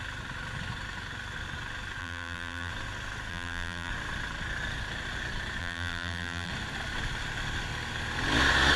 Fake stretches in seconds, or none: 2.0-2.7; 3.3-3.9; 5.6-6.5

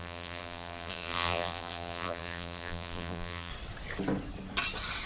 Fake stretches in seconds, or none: 0.0-3.5

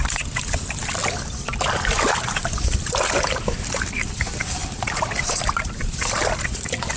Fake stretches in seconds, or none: 0.0-1.0; 2.1-7.0

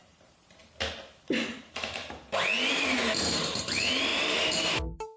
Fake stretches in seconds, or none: 0.0-0.6; 1.5-2.0; 2.7-5.2

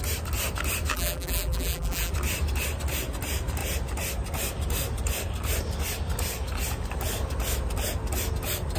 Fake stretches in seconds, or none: 0.9-2.1